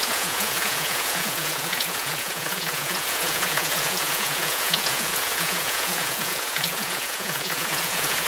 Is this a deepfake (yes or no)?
yes